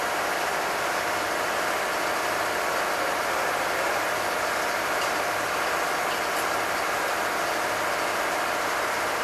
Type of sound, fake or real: real